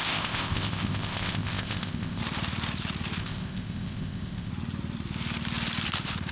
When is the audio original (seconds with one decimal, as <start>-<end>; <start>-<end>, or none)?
2.2-3.2; 4.5-6.3